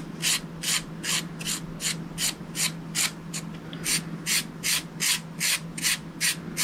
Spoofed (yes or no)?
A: no